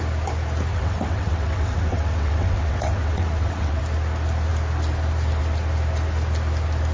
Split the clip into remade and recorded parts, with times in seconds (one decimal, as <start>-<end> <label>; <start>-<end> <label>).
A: 0.0-0.7 recorded; 0.7-3.8 remade; 3.8-6.9 recorded